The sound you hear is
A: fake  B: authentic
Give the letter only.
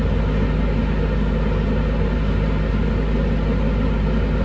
B